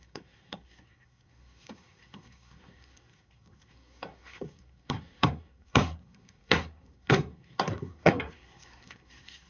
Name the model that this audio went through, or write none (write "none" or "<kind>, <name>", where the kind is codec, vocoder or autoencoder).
codec, SNAC